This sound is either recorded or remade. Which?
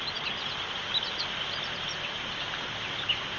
recorded